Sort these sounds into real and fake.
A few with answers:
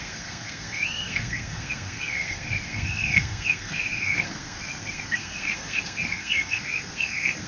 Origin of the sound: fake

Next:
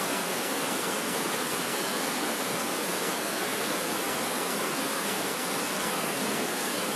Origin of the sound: fake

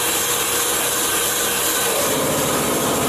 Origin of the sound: real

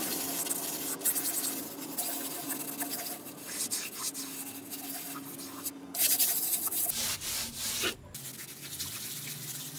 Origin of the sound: real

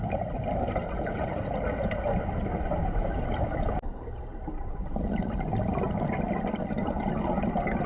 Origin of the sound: real